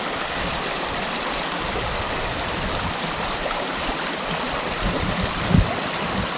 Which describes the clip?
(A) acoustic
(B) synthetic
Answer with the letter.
A